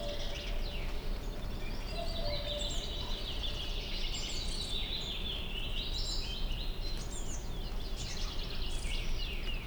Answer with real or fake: real